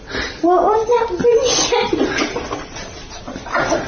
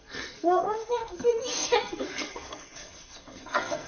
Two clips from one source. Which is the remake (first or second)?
second